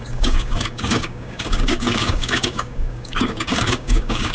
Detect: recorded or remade remade